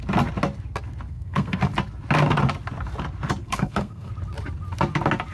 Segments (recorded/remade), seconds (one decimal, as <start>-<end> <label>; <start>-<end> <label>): 0.0-1.1 recorded; 1.1-1.6 remade; 1.6-3.4 recorded; 3.4-4.1 remade; 4.1-5.3 recorded